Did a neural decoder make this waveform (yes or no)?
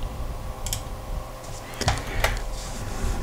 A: no